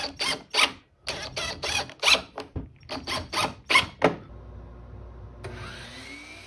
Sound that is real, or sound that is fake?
real